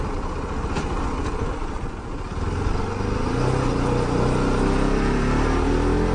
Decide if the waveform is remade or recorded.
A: recorded